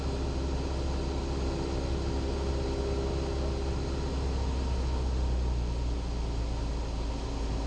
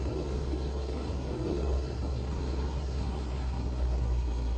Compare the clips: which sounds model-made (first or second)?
second